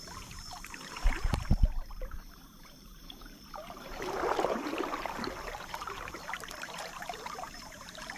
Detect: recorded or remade remade